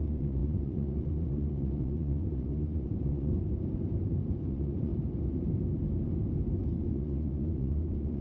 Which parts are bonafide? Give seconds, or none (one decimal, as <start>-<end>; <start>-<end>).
3.3-4.5; 4.9-6.8